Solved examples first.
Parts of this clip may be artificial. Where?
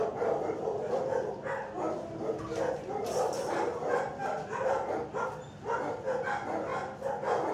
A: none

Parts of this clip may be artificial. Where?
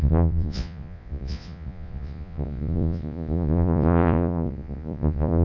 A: 0.0-5.4 (vocoder, Vocos)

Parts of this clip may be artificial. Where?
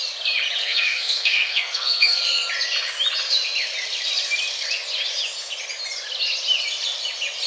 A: 0.6-2.2 (codec, SNAC)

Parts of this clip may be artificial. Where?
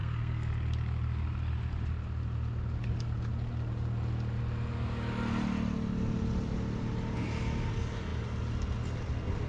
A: 0.0-0.5 (codec, SNAC)